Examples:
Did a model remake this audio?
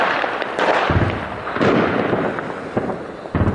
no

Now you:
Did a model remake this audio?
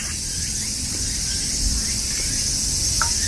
no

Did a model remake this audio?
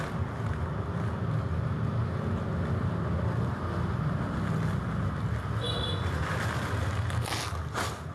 no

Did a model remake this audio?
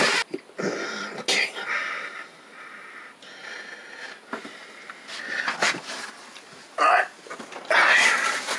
no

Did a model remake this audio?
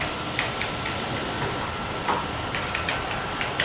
yes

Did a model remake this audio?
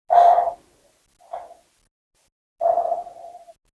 no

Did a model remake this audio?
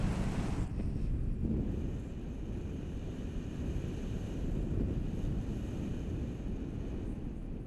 no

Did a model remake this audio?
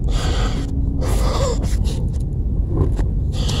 no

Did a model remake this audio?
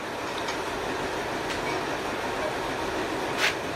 no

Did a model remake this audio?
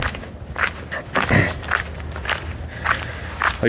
no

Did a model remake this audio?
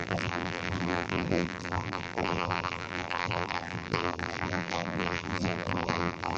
yes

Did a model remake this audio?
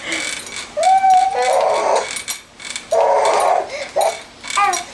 no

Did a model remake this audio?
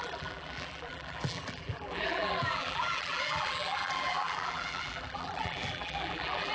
yes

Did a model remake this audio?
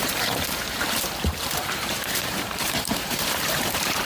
yes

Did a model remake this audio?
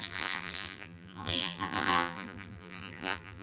yes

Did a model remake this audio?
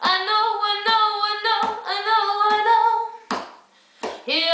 no